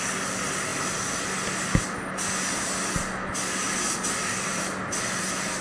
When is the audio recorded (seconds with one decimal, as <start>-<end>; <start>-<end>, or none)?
0.0-5.6